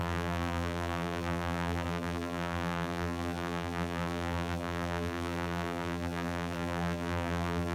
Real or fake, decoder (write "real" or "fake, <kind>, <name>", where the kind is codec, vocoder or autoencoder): fake, vocoder, BigVGAN v2